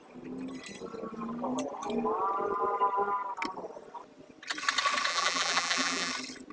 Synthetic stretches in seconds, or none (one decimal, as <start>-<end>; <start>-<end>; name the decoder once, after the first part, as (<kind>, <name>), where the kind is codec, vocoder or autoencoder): 5.1-6.1 (vocoder, BigVGAN v2)

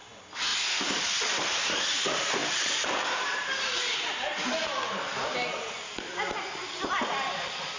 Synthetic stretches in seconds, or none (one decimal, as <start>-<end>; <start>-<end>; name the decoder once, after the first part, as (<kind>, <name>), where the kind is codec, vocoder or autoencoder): 2.4-5.9 (vocoder, BigVGAN v2)

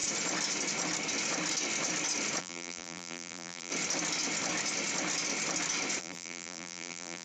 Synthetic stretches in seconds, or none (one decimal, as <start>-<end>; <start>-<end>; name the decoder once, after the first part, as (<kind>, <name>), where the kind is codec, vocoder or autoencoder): 2.4-3.7 (vocoder, BigVGAN v2); 6.0-7.2

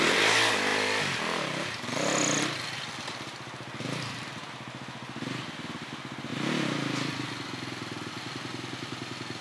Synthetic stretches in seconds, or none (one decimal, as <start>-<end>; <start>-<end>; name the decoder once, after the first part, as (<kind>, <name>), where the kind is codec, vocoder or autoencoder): none

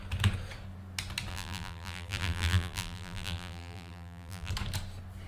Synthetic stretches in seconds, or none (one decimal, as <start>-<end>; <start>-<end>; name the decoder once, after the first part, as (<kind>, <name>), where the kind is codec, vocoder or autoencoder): 1.3-4.5 (vocoder, BigVGAN v2)

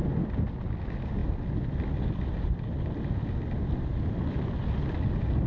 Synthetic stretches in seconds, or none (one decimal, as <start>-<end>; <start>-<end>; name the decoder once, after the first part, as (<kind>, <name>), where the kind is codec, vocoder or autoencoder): none

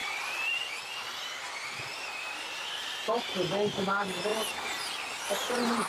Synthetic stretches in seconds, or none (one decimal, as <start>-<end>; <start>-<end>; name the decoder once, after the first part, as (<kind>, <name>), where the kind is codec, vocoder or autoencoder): 0.0-4.3 (vocoder, BigVGAN v2); 5.2-5.9